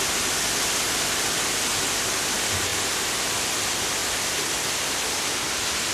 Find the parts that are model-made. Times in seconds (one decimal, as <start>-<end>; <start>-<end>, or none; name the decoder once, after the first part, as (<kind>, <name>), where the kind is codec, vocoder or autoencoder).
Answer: none